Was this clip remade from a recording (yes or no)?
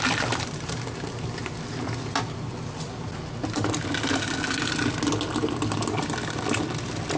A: no